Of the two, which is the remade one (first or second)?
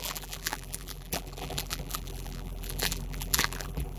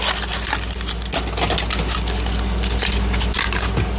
first